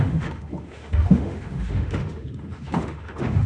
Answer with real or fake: fake